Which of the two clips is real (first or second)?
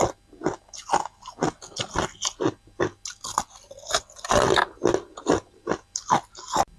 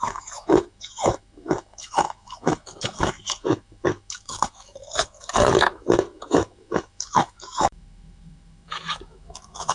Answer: first